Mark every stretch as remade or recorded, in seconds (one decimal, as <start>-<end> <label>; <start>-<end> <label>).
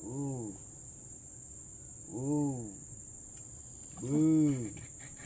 0.0-5.3 recorded